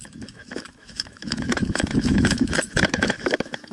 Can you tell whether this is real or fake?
fake